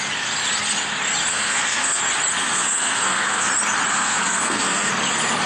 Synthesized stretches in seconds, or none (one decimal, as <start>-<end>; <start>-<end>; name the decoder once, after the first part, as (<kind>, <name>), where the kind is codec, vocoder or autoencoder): 1.3-2.0 (codec, SNAC); 2.4-3.5; 3.9-4.9